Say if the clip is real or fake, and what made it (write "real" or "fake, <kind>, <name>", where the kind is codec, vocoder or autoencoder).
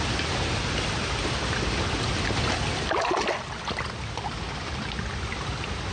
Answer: real